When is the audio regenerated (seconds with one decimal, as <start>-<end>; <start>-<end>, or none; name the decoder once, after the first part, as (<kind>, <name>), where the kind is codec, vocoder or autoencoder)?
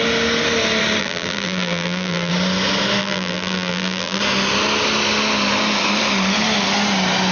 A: 1.0-2.3 (vocoder, BigVGAN v2); 3.0-4.2